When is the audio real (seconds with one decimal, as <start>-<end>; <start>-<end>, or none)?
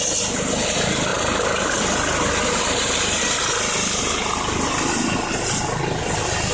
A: 0.0-6.5